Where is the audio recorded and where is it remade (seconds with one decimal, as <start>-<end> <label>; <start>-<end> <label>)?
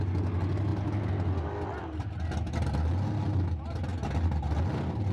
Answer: 0.0-5.1 recorded